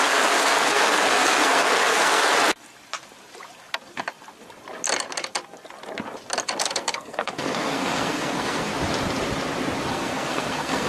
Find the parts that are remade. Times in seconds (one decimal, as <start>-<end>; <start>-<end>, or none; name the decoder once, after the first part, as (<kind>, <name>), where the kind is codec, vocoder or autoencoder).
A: 0.0-2.3 (codec, SNAC); 6.6-8.7; 9.9-10.9